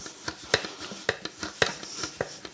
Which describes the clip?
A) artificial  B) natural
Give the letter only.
B